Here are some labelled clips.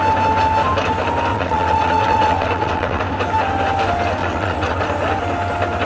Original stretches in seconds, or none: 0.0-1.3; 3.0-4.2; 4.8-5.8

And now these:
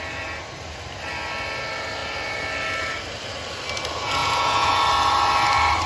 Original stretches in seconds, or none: 0.0-4.2; 4.8-5.9

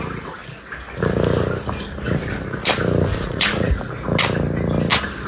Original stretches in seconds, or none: 0.0-3.1; 3.7-5.3

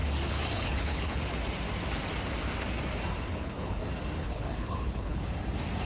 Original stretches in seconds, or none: 1.3-3.3; 3.8-4.2; 5.2-5.8

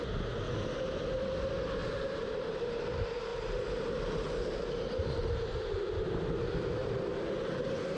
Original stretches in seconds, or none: 0.0-1.8; 2.8-3.3; 5.8-8.0

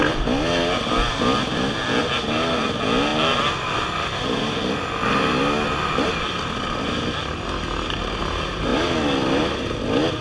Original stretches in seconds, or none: 0.0-10.2

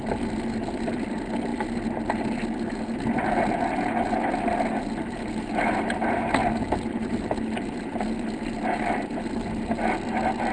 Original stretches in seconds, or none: 0.0-10.5

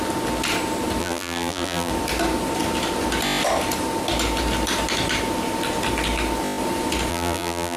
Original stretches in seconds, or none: 0.0-1.0; 1.9-7.1